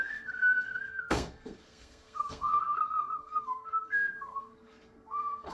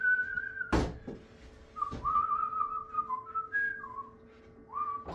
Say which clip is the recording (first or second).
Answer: second